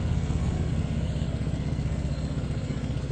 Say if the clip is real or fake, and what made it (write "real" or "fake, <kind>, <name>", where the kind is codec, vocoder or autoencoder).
fake, codec, SNAC